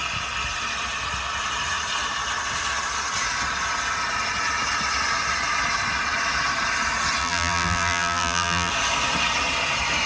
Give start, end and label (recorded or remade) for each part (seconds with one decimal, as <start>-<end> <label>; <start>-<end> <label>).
0.0-7.2 recorded; 7.2-8.7 remade; 8.7-10.1 recorded